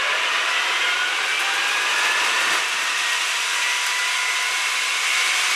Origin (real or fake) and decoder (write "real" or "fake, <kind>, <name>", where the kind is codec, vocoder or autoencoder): real